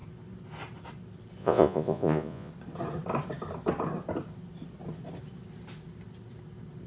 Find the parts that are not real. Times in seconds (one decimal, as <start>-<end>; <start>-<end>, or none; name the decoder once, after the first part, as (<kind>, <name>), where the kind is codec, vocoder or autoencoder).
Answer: 1.4-2.5 (vocoder, Vocos)